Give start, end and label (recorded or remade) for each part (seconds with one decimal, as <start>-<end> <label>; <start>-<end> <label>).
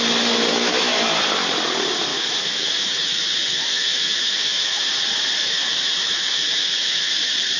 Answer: 0.0-0.5 recorded; 0.5-1.2 remade; 1.2-2.1 recorded; 2.1-4.9 remade; 4.9-5.4 recorded; 5.4-7.1 remade; 7.1-7.6 recorded